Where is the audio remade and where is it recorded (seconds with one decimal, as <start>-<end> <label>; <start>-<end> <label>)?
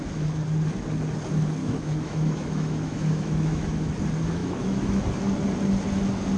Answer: 0.0-1.6 recorded; 1.6-3.9 remade; 3.9-4.4 recorded; 4.4-5.0 remade; 5.0-6.4 recorded